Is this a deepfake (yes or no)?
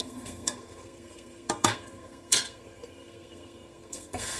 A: yes